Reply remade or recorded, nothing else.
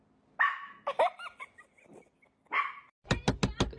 recorded